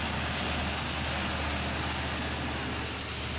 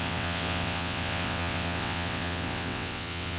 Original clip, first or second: first